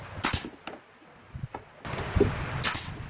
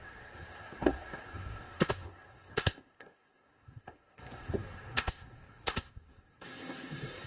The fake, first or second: second